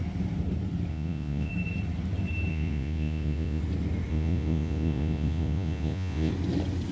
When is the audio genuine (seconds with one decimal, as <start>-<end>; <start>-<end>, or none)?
0.0-0.9; 1.5-2.5; 3.6-4.1; 6.3-6.9